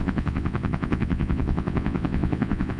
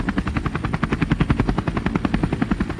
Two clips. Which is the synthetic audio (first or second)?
first